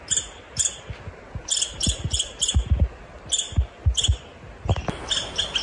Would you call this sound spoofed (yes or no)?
no